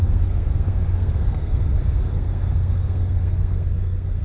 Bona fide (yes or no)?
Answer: no